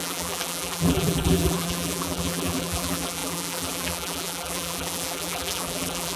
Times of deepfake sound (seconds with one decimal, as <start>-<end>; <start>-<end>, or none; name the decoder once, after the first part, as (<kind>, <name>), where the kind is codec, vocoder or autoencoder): 0.0-6.2 (vocoder, BigVGAN v2)